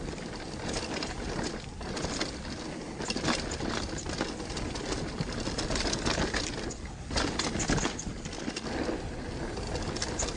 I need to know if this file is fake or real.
real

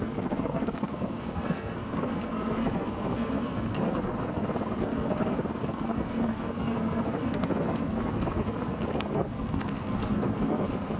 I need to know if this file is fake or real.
fake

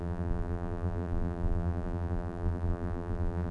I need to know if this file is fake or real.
fake